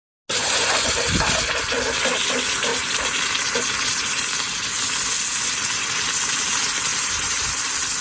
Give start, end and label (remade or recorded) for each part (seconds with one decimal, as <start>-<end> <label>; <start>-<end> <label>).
0.0-0.4 recorded; 0.4-0.9 remade; 0.9-8.0 recorded